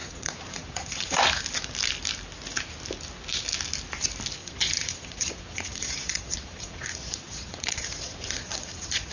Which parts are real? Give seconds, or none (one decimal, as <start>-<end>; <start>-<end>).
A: 1.2-4.4